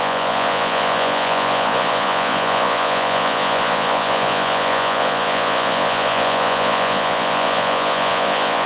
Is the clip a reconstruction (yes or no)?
yes